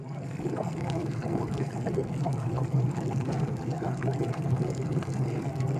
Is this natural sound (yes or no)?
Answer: no